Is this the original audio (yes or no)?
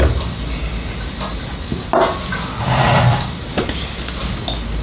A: yes